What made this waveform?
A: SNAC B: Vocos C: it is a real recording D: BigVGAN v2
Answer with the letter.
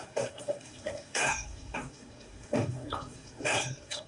A